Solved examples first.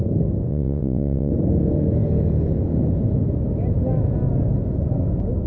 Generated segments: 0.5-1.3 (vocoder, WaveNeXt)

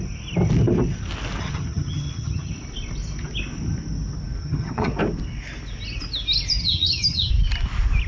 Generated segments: 1.4-2.5 (vocoder, HiFi-GAN); 4.4-4.9; 6.6-7.3

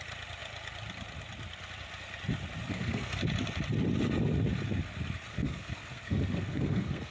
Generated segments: 2.7-3.2 (codec, SNAC); 5.3-7.1